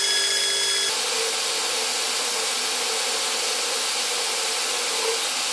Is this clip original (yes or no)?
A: yes